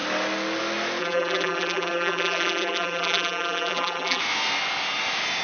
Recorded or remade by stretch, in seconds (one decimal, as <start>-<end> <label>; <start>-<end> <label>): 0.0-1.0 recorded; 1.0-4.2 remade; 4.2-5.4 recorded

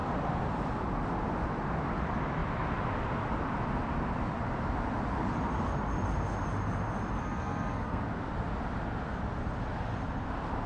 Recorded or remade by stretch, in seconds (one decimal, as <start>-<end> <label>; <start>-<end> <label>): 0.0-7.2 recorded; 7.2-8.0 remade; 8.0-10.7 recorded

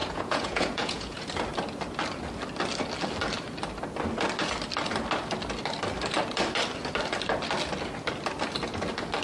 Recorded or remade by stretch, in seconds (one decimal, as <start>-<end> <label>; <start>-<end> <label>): 0.0-1.3 remade; 1.3-9.2 recorded

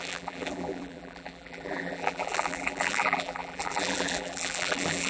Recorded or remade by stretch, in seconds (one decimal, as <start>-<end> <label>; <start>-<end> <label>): 0.0-5.1 remade

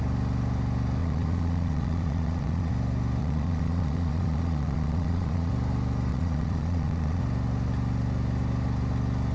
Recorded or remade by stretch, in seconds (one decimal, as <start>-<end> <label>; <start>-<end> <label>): 0.0-1.0 recorded; 1.0-2.7 remade; 2.7-3.2 recorded; 3.2-5.5 remade; 5.5-6.1 recorded; 6.1-7.2 remade; 7.2-9.3 recorded

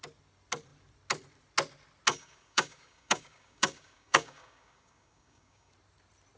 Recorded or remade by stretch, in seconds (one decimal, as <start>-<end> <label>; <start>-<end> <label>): 0.0-2.1 recorded; 2.1-5.7 remade; 5.7-6.4 recorded

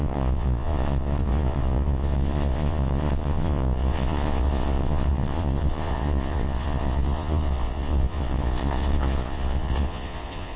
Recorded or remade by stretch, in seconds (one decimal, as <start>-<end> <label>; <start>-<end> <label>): 0.0-10.6 remade

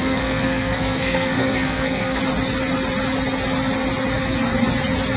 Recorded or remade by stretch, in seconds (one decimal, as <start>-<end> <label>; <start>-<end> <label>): 0.0-2.2 remade; 2.2-5.2 recorded